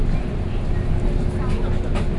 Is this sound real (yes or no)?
yes